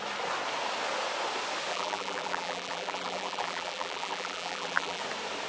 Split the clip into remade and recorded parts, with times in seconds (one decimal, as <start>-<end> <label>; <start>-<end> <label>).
0.0-1.7 recorded; 1.7-5.0 remade; 5.0-5.5 recorded